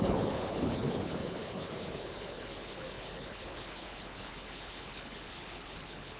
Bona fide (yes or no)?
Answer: no